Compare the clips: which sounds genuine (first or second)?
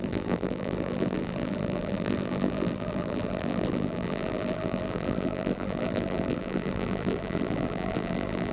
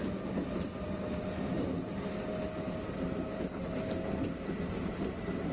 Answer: second